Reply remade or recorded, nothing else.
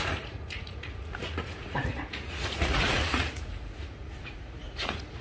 remade